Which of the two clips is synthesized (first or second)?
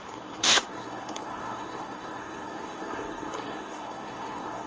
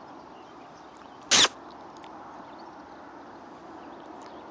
first